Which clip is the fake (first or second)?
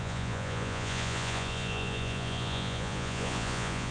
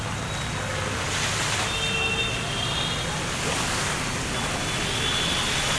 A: first